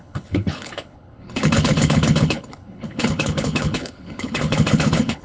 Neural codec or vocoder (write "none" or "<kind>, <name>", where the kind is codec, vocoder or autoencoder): codec, HILCodec